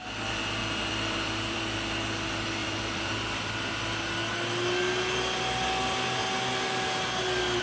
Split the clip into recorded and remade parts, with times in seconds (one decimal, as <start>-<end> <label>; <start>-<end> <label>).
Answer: 0.0-0.6 recorded; 0.6-1.6 remade; 1.6-2.6 recorded; 2.6-3.5 remade; 3.5-7.6 recorded